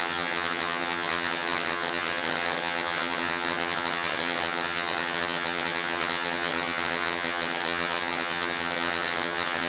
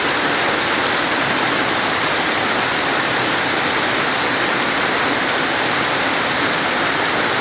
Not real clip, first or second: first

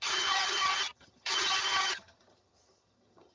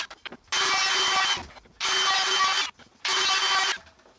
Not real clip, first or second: first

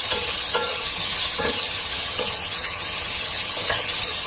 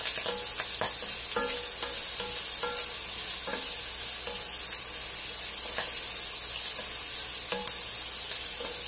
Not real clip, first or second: first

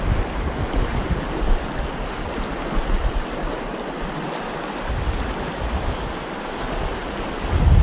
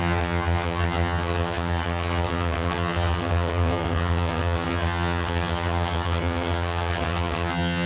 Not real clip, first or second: second